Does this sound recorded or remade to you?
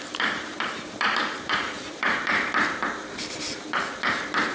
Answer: remade